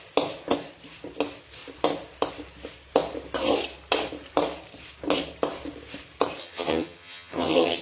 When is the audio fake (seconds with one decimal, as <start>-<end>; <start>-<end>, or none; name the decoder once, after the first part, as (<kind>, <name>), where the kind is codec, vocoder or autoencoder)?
6.4-7.8 (vocoder, HiFi-GAN)